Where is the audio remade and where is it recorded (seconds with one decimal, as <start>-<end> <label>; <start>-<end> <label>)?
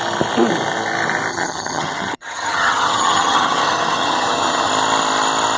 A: 0.0-1.3 recorded; 1.3-4.7 remade; 4.7-5.6 recorded